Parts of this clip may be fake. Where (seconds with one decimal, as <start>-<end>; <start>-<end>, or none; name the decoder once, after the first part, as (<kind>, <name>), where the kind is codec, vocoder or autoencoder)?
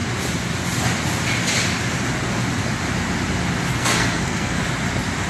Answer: 3.7-4.6 (codec, SNAC)